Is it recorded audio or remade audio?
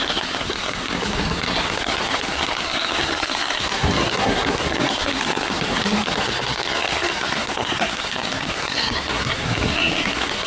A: remade